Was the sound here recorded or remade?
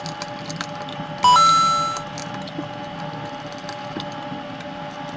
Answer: recorded